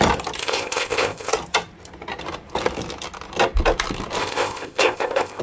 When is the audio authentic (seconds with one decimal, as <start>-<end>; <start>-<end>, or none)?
0.0-0.4; 1.3-4.2